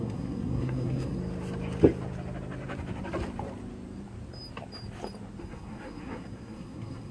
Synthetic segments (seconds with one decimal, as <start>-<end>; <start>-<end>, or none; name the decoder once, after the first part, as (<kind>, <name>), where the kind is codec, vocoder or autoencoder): 0.0-1.2 (codec, SNAC); 5.4-7.1